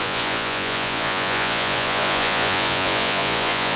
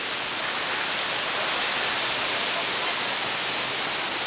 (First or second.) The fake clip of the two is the first